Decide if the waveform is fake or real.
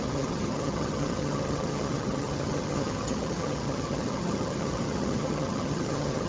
fake